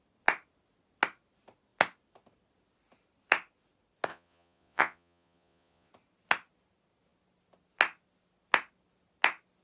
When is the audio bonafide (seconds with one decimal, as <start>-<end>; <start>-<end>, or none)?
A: 0.0-4.1; 5.9-9.6